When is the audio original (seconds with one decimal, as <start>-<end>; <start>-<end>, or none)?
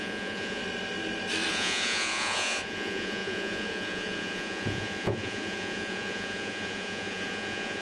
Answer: 0.6-1.5